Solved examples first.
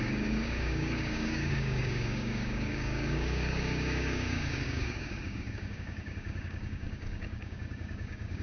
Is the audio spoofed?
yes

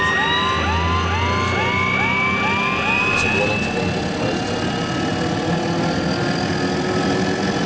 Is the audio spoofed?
no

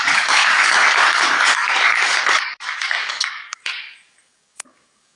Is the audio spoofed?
yes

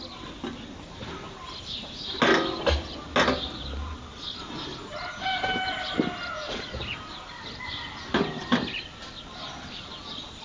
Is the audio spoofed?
no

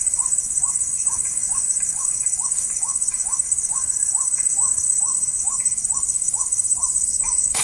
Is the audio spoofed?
yes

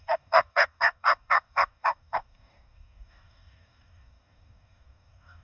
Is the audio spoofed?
yes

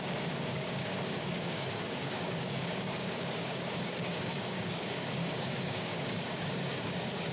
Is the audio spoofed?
yes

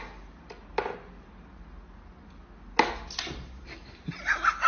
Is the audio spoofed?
no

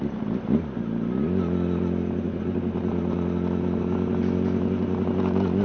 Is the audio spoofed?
no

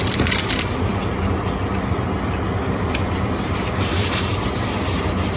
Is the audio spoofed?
no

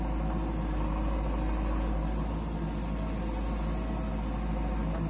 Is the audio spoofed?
no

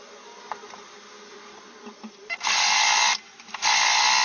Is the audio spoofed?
no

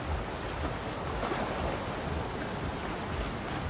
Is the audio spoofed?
no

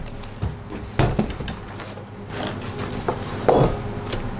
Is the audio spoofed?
no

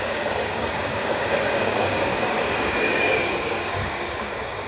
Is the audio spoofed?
yes